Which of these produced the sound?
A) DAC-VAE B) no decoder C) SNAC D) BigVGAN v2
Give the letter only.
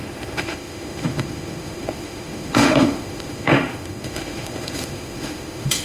A